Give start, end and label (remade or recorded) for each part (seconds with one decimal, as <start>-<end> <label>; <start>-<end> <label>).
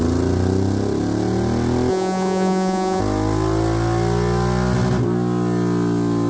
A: 0.0-1.9 recorded; 1.9-3.0 remade; 3.0-6.3 recorded